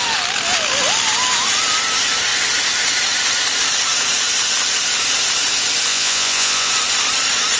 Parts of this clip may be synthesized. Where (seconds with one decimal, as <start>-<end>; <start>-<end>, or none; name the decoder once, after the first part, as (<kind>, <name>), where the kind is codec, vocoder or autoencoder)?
5.9-6.7 (vocoder, Vocos)